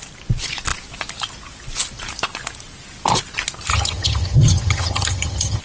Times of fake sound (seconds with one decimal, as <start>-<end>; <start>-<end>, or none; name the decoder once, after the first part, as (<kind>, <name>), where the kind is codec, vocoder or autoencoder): 3.7-5.6 (vocoder, HiFi-GAN)